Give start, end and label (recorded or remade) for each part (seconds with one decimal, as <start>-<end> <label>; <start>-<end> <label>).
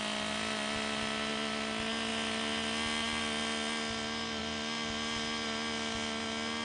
0.0-6.6 recorded